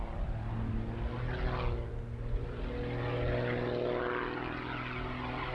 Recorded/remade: recorded